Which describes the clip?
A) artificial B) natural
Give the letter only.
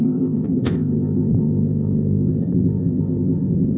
A